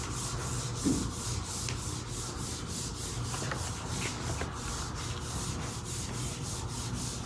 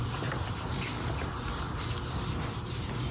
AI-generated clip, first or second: second